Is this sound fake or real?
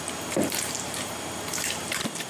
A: fake